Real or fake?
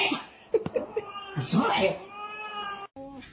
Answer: real